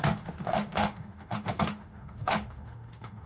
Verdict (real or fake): fake